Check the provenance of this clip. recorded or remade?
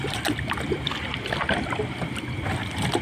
recorded